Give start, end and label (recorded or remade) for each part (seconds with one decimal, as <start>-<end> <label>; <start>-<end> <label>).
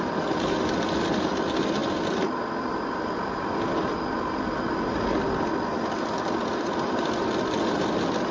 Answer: 0.0-8.3 recorded